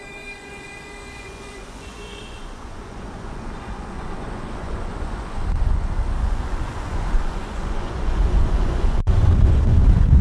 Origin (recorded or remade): remade